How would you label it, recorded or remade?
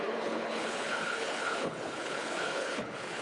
remade